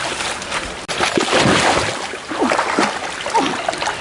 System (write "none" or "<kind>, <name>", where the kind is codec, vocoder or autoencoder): none